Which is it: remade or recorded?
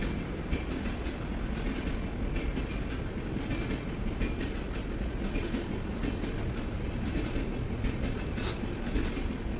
recorded